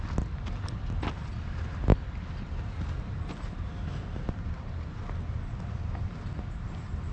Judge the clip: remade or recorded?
recorded